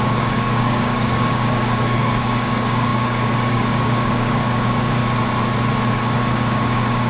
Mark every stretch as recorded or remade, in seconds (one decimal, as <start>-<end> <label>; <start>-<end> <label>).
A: 0.0-5.0 remade; 5.0-5.9 recorded; 5.9-7.1 remade